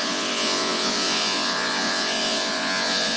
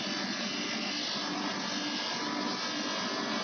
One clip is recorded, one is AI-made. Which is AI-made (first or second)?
first